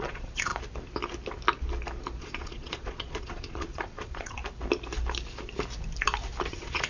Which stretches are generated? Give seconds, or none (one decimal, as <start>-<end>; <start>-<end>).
0.0-0.5; 2.2-4.4; 6.5-6.9